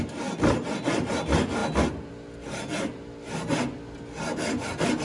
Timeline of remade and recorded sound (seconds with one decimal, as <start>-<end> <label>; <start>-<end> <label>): 0.0-5.0 recorded